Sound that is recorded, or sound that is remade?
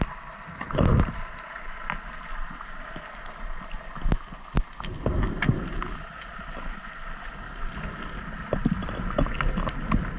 recorded